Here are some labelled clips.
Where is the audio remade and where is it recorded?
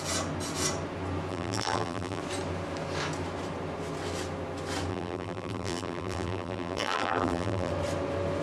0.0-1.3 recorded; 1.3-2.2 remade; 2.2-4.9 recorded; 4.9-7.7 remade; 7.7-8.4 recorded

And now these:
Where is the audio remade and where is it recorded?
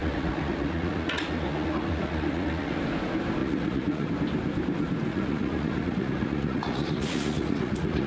0.0-2.8 remade; 2.8-3.4 recorded; 3.4-4.1 remade; 4.1-5.1 recorded; 5.1-8.1 remade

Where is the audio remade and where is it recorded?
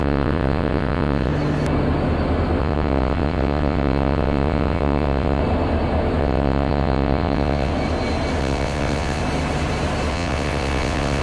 0.0-1.3 remade; 1.3-2.6 recorded; 2.6-5.4 remade; 5.4-6.2 recorded; 6.2-7.7 remade; 7.7-8.4 recorded; 8.4-9.2 remade; 9.2-10.1 recorded; 10.1-11.2 remade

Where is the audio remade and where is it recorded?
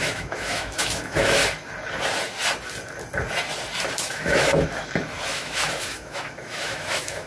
0.0-1.4 remade; 1.4-4.0 recorded; 4.0-4.5 remade; 4.5-5.3 recorded; 5.3-7.3 remade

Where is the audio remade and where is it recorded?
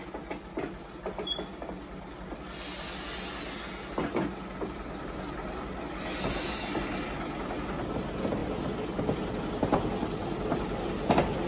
0.0-11.5 recorded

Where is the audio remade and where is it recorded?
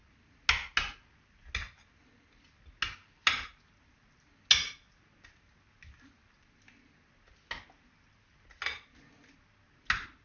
0.0-10.2 recorded